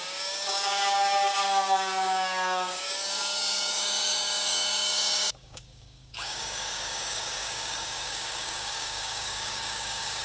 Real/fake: fake